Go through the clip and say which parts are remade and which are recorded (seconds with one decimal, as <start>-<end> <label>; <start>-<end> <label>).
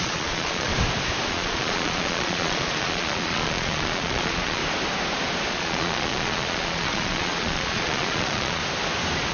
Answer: 0.0-0.7 remade; 0.7-1.3 recorded; 1.3-4.6 remade; 4.6-5.5 recorded; 5.5-8.6 remade; 8.6-9.3 recorded